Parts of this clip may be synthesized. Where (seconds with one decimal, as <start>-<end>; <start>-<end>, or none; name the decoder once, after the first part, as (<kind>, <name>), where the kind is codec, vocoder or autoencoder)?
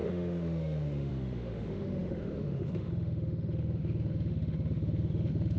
0.0-5.6 (autoencoder, DAC-VAE)